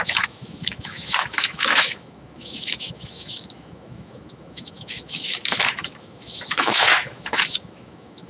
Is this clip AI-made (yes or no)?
yes